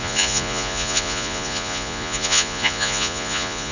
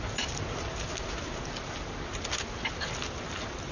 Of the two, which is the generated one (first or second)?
first